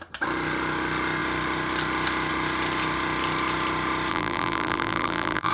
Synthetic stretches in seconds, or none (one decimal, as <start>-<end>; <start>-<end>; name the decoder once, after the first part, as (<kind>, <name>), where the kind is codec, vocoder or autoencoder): 4.1-5.5 (vocoder, BigVGAN v2)